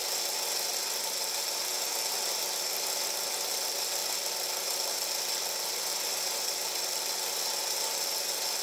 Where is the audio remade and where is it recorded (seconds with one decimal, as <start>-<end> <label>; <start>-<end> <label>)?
0.0-8.6 recorded